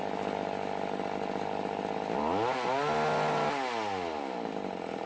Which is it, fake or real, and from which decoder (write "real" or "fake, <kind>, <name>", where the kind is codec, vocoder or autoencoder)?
real